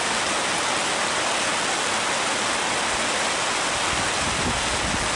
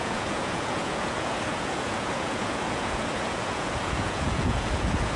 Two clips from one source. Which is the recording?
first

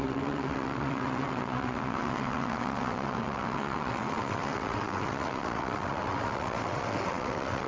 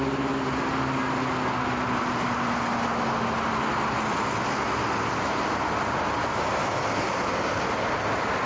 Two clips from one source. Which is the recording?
second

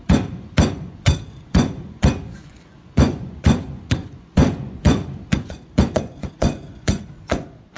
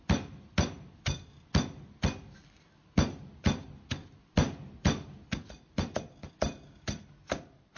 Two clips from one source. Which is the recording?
second